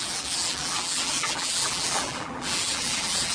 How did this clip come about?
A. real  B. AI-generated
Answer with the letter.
B